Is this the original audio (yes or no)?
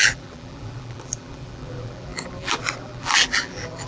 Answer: no